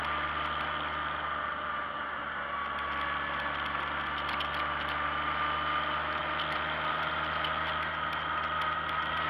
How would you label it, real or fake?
real